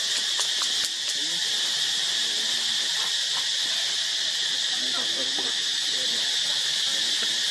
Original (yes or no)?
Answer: yes